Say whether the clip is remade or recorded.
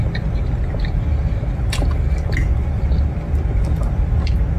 recorded